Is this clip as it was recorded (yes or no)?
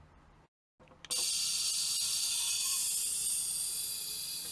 yes